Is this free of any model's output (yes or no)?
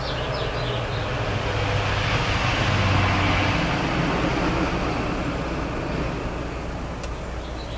yes